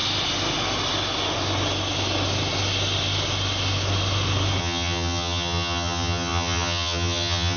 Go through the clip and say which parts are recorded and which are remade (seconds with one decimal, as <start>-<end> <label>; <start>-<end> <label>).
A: 0.0-4.6 recorded; 4.6-7.6 remade